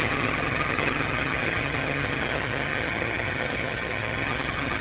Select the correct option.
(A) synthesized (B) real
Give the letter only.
A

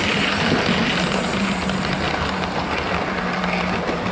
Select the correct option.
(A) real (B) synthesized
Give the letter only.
A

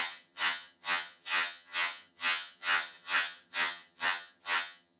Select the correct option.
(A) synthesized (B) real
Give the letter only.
A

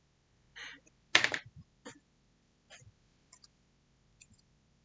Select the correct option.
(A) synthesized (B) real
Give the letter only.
B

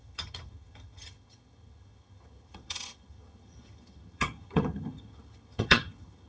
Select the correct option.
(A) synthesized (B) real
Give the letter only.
A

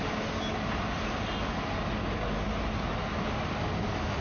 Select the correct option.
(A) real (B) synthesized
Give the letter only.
A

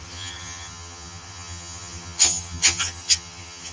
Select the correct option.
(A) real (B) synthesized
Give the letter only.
B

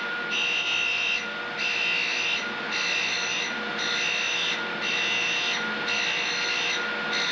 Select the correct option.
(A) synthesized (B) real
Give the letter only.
B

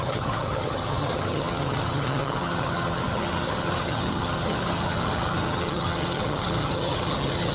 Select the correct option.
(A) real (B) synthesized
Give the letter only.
B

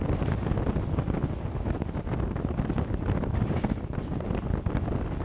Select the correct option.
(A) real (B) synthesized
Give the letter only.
A